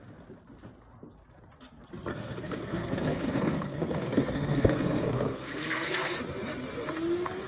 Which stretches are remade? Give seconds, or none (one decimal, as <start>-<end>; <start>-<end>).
2.1-6.2